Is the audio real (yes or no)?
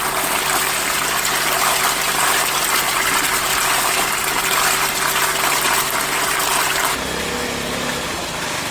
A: yes